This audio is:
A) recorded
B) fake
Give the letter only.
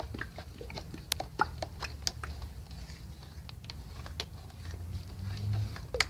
A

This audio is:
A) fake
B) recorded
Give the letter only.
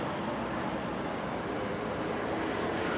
B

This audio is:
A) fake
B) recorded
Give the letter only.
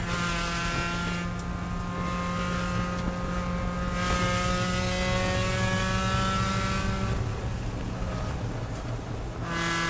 B